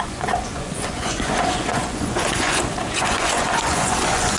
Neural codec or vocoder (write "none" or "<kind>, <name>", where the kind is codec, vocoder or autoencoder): vocoder, Vocos